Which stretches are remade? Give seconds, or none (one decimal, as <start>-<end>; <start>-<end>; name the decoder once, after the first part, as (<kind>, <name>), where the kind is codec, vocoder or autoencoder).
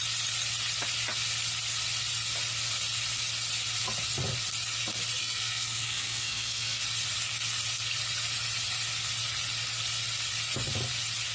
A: 5.2-6.8 (codec, SNAC)